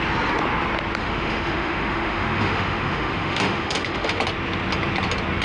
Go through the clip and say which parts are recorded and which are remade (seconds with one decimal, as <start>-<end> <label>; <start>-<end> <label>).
0.0-1.0 recorded; 1.0-4.2 remade; 4.2-5.4 recorded